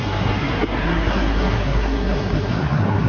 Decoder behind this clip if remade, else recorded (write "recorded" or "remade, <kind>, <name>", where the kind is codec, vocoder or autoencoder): remade, codec, SNAC